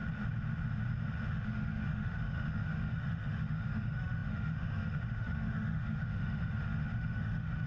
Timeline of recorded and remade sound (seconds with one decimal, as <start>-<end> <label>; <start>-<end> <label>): 0.0-1.3 recorded; 1.3-7.7 remade